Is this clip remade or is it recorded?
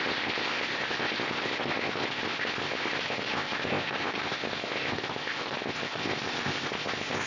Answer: remade